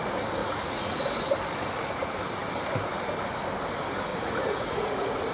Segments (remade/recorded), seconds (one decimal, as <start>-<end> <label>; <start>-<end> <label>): 0.0-0.4 recorded; 0.4-1.0 remade; 1.0-4.1 recorded; 4.1-5.3 remade